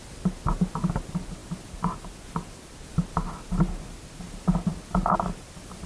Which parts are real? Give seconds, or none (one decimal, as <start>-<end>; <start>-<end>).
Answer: 0.0-5.9